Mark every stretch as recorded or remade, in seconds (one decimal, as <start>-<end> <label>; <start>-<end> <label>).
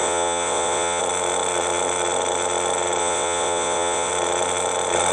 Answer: 0.0-1.0 remade; 1.0-3.0 recorded; 3.0-4.1 remade; 4.1-5.1 recorded